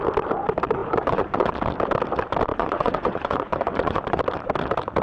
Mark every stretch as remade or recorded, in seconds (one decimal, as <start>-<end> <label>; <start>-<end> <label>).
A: 0.0-0.8 recorded; 0.8-1.5 remade; 1.5-2.5 recorded; 2.5-4.2 remade; 4.2-5.0 recorded